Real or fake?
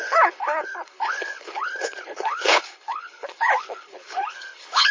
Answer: fake